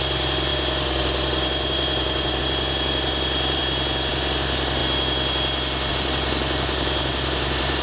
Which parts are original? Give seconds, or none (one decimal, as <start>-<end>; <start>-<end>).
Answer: 3.6-4.1; 4.8-5.9